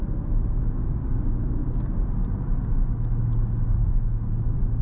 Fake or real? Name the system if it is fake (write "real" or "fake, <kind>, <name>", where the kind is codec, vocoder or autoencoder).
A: real